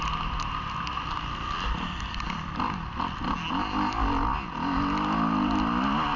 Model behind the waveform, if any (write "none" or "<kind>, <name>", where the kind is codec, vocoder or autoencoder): none